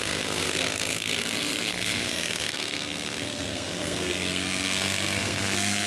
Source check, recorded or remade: remade